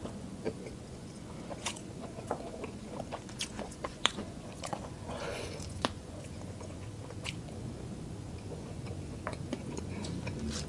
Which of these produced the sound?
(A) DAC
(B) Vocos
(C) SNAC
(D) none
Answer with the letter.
B